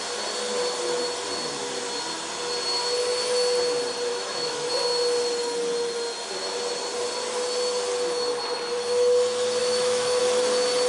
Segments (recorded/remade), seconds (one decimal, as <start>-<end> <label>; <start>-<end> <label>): 0.0-4.1 recorded; 4.1-4.7 remade; 4.7-9.6 recorded; 9.6-10.2 remade; 10.2-10.9 recorded